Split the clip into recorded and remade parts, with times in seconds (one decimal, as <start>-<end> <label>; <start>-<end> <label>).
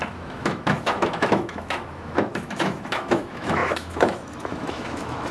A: 0.0-5.3 remade